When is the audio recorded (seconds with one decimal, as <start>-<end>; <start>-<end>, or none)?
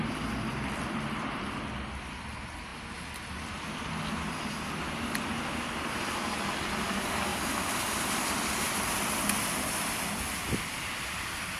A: 1.7-7.3; 9.1-11.6